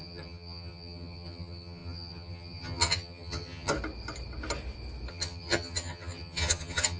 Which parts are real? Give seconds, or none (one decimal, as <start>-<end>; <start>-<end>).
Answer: 3.7-5.1

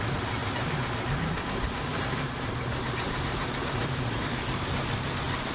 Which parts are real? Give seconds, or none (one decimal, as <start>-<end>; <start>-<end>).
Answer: 0.0-1.9